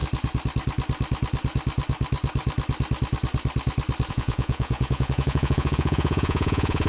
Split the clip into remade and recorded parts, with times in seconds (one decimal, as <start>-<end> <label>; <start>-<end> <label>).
0.0-4.1 recorded; 4.1-6.9 remade